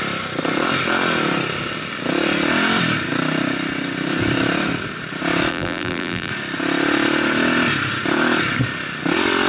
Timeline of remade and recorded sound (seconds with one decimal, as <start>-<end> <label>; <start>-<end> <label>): 0.0-5.5 recorded; 5.5-6.3 remade; 6.3-9.5 recorded